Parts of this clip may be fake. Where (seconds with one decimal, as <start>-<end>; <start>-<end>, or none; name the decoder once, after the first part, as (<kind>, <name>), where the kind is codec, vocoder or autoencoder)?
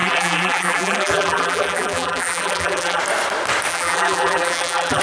0.0-3.0 (vocoder, BigVGAN v2); 3.7-5.0